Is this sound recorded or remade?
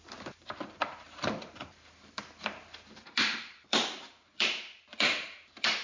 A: remade